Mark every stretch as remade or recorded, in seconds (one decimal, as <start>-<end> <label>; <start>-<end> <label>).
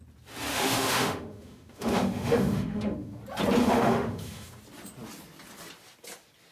0.0-0.5 recorded; 0.5-3.2 remade; 3.2-3.6 recorded; 3.6-4.6 remade; 4.6-6.5 recorded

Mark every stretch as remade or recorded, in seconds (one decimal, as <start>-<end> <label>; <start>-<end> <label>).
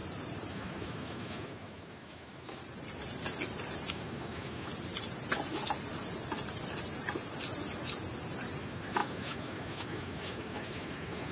0.0-0.5 recorded; 0.5-2.6 remade; 2.6-3.9 recorded; 3.9-4.7 remade; 4.7-8.6 recorded; 8.6-11.3 remade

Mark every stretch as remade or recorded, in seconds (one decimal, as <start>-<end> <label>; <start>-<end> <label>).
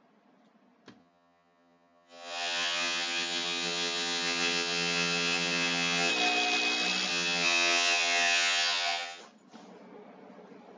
0.0-1.0 recorded; 1.0-6.1 remade; 6.1-7.1 recorded; 7.1-9.2 remade; 9.2-10.8 recorded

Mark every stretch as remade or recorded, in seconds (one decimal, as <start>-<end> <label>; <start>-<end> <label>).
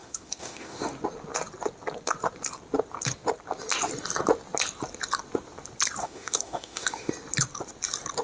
0.0-0.9 remade; 0.9-6.0 recorded; 6.0-7.1 remade; 7.1-8.2 recorded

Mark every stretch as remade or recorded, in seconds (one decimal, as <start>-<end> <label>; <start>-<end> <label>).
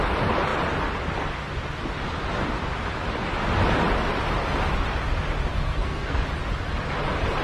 0.0-5.5 recorded; 5.5-6.2 remade; 6.2-7.4 recorded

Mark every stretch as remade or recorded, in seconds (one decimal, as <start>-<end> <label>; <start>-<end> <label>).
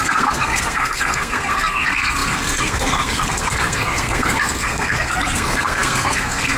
0.0-6.6 remade